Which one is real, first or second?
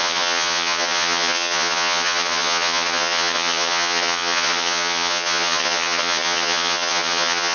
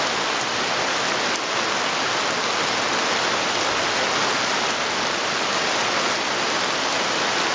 second